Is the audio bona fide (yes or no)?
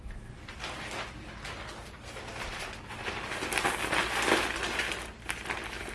yes